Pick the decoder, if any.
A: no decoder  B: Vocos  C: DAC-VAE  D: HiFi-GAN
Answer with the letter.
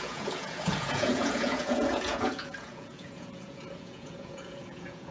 B